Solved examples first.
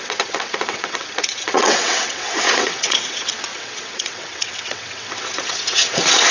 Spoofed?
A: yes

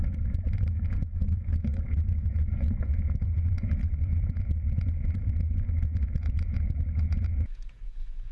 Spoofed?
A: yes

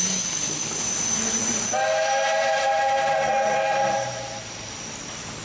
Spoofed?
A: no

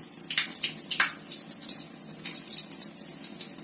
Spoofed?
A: no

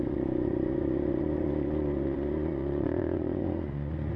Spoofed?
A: yes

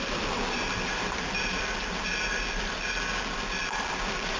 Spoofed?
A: no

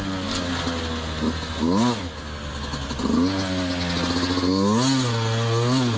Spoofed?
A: no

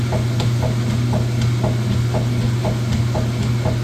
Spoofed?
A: no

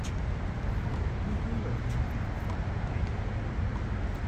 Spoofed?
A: no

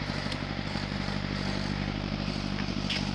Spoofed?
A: yes